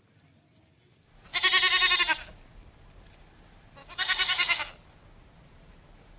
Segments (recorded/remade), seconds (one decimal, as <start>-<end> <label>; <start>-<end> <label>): 0.0-3.8 recorded; 3.8-4.7 remade; 4.7-6.2 recorded